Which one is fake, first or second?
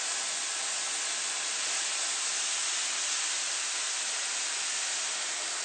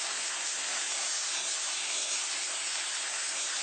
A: second